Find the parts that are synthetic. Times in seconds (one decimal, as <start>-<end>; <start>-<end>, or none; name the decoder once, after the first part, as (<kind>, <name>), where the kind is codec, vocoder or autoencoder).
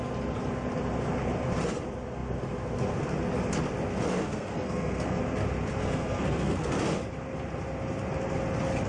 4.1-5.2 (codec, SNAC); 5.8-6.8